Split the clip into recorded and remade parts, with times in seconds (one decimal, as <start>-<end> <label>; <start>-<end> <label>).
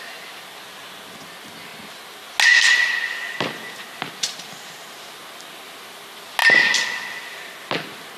0.0-8.2 recorded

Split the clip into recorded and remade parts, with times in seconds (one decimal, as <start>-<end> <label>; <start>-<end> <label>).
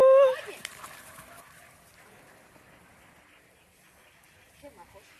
0.0-5.2 recorded